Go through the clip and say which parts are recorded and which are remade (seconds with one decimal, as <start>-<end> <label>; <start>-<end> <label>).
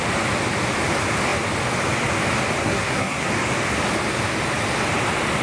0.0-2.6 recorded; 2.6-3.3 remade; 3.3-5.4 recorded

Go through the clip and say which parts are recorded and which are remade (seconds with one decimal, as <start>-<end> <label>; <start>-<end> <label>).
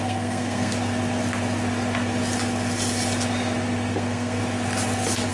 0.0-0.7 remade; 0.7-3.9 recorded; 3.9-4.4 remade; 4.4-5.3 recorded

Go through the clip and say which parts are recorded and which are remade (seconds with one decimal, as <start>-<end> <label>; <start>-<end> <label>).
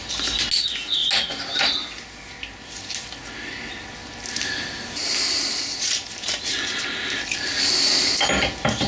0.0-8.9 recorded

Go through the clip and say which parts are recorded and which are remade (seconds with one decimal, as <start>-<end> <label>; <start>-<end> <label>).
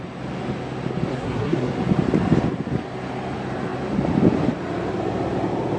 0.0-1.1 recorded; 1.1-1.7 remade; 1.7-5.8 recorded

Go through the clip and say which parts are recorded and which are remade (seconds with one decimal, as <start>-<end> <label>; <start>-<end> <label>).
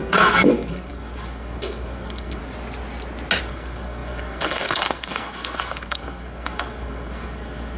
0.0-2.4 remade; 2.4-3.4 recorded; 3.4-7.8 remade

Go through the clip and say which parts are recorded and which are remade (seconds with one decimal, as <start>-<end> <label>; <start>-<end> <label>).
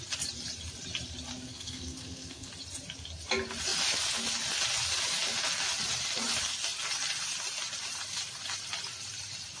0.0-1.3 recorded; 1.3-2.5 remade; 2.5-9.6 recorded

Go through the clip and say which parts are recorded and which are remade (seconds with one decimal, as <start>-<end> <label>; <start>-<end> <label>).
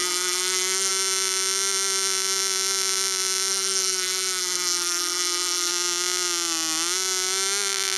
0.0-0.9 remade; 0.9-3.5 recorded; 3.5-5.7 remade; 5.7-8.0 recorded